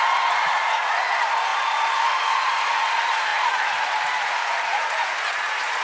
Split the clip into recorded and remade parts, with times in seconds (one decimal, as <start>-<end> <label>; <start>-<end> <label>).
0.0-5.8 remade